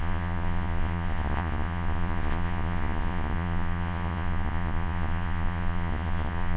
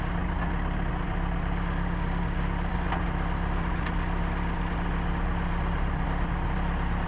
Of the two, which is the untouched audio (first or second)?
second